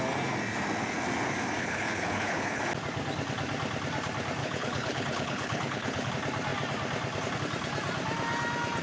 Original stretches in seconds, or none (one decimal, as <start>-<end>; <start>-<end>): 0.0-1.6; 2.6-4.4; 6.1-8.8